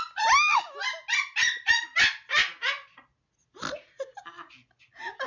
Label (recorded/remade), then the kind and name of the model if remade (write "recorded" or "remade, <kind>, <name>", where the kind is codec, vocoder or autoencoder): recorded